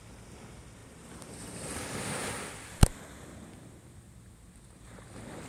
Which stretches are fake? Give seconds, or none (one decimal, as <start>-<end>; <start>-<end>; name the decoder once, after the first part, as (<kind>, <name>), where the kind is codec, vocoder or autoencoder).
0.8-4.1 (vocoder, BigVGAN v2)